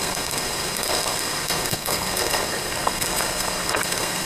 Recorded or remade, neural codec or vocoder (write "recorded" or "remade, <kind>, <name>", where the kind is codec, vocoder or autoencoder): remade, codec, SNAC